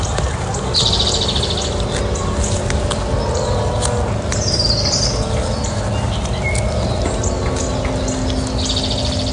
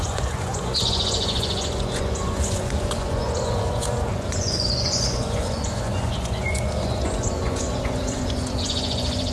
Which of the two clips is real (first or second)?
first